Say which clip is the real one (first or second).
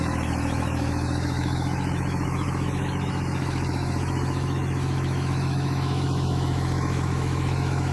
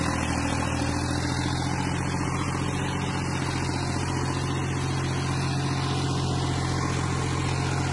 second